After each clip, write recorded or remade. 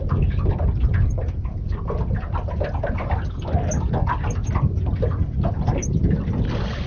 recorded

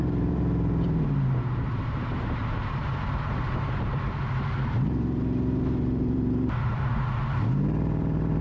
remade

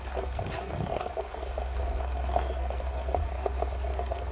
remade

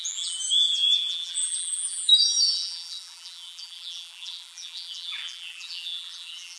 remade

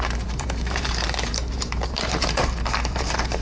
remade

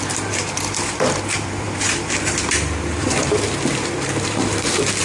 remade